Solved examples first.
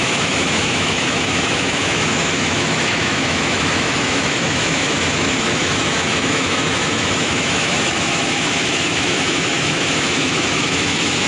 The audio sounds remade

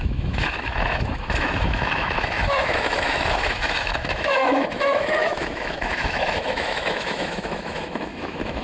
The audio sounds remade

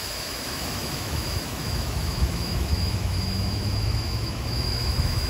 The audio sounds remade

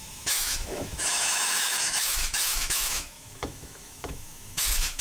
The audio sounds remade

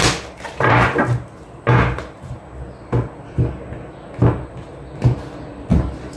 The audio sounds recorded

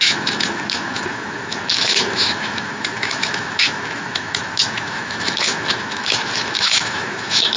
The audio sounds remade